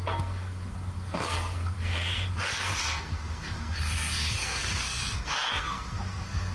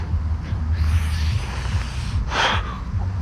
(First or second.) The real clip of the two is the second